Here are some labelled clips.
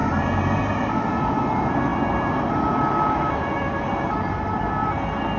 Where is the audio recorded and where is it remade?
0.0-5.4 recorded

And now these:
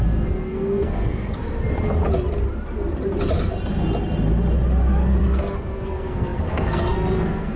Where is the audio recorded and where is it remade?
0.0-1.4 remade; 1.4-5.2 recorded; 5.2-7.6 remade